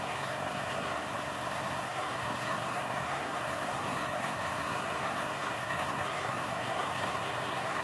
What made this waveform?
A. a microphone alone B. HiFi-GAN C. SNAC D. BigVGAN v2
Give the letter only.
C